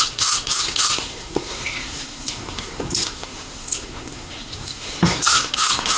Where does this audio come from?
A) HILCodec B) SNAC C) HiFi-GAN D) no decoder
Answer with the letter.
B